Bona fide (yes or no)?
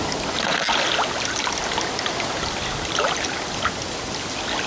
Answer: yes